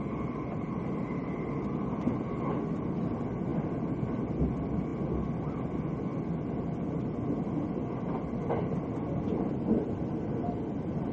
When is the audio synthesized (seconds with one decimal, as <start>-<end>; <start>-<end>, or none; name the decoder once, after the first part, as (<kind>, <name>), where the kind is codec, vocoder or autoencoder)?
none

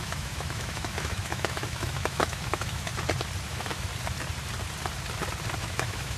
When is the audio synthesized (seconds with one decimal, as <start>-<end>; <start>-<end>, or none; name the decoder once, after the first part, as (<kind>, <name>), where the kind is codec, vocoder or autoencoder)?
0.0-2.9 (autoencoder, DAC-VAE); 3.5-3.9; 5.6-6.2

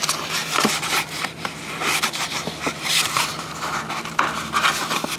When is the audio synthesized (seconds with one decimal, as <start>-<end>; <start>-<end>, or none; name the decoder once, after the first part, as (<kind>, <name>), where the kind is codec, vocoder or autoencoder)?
0.4-3.5 (vocoder, BigVGAN v2)

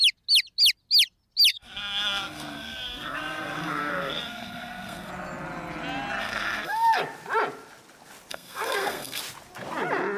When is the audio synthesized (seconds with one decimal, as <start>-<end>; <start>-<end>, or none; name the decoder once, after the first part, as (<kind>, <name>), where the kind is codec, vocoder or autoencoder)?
1.5-5.1 (codec, SNAC); 6.2-7.0; 8.3-9.2

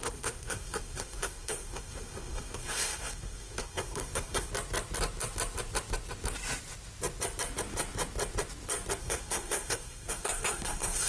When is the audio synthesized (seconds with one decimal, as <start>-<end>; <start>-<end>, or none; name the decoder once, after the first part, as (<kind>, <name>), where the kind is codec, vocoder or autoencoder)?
0.0-4.5 (codec, SNAC); 9.0-11.1